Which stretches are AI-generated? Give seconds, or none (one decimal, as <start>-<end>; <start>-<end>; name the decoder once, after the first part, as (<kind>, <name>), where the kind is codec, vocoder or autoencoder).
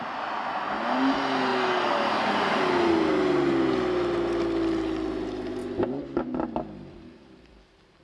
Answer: none